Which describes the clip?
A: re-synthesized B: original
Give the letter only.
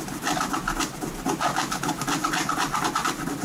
B